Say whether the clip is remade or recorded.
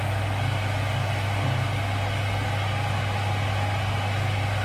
recorded